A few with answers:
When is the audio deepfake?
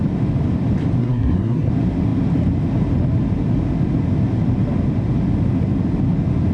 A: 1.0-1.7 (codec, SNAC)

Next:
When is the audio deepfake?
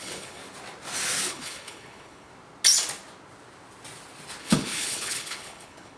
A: 0.0-0.4 (codec, HILCodec); 1.3-2.3; 4.4-6.0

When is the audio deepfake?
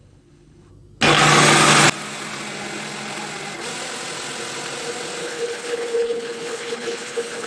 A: 0.0-0.7 (codec, HILCodec); 5.2-7.5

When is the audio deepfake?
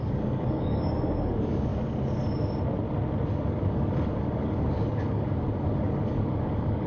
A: 0.0-1.7 (codec, DAC); 3.3-6.9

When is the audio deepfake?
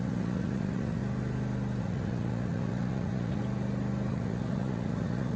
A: 0.0-1.0 (vocoder, Vocos); 1.8-3.4; 4.1-5.4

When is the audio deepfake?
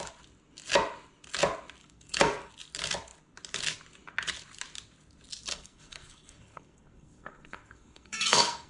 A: 1.8-2.5 (codec, SNAC); 5.5-8.7